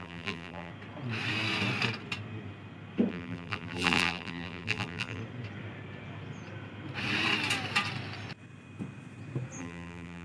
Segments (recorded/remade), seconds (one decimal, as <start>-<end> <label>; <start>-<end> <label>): 0.0-0.7 remade; 0.7-3.1 recorded; 3.1-5.2 remade; 5.2-9.6 recorded; 9.6-10.2 remade